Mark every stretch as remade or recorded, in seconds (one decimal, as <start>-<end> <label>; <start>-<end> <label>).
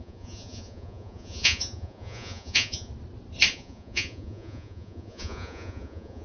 0.0-2.9 remade; 2.9-3.5 recorded; 3.5-6.2 remade